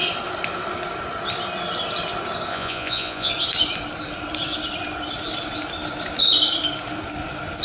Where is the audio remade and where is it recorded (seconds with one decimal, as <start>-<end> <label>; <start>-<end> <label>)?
0.0-2.5 recorded; 2.5-3.3 remade; 3.3-7.6 recorded